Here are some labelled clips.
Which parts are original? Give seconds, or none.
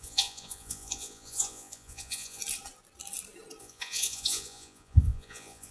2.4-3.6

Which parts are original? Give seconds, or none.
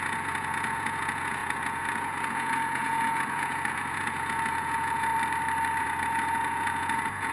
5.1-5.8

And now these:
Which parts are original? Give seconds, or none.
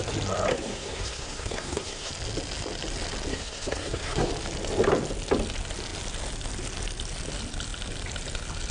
0.0-0.5; 2.1-3.3; 4.3-8.7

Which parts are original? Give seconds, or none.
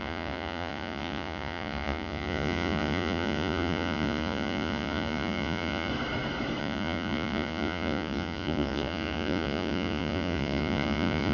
5.9-6.6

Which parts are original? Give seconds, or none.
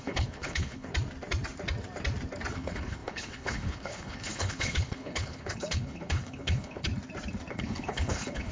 0.9-2.5; 6.9-7.5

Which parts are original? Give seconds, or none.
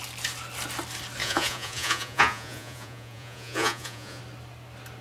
0.0-1.2; 4.2-5.0